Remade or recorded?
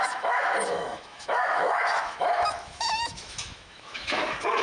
remade